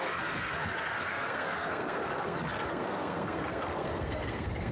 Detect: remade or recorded remade